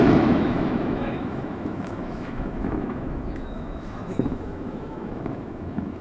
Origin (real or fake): fake